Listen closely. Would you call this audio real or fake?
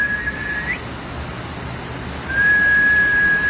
real